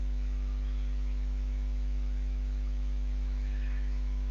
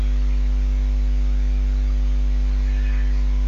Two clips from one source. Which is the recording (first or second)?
second